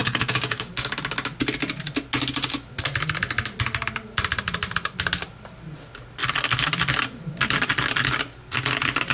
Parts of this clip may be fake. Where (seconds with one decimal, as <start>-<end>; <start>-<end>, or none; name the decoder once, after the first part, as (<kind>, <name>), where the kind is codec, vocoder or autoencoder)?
0.0-0.7 (codec, DAC)

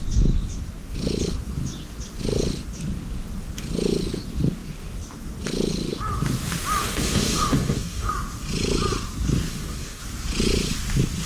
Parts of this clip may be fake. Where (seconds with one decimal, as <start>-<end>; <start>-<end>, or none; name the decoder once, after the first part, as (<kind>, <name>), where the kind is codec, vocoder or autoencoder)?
6.8-8.1 (codec, DAC); 9.5-10.0

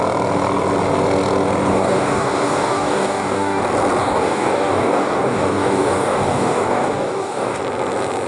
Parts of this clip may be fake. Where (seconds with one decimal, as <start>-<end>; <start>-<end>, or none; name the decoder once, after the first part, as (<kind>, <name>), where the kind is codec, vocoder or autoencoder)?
1.7-3.6 (codec, DAC); 4.0-7.6